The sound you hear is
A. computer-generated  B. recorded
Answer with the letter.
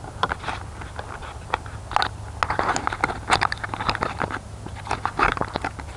B